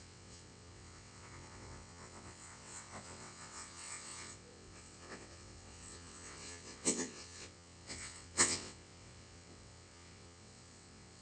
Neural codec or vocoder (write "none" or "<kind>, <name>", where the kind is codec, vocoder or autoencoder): vocoder, WaveNeXt